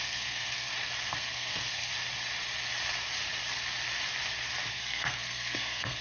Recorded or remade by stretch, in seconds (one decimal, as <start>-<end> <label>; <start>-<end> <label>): 0.0-0.7 remade; 0.7-1.2 recorded; 1.2-1.9 remade; 1.9-4.7 recorded; 4.7-6.0 remade